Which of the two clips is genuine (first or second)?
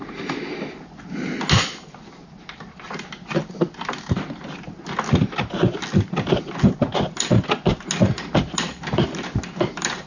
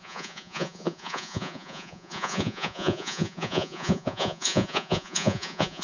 first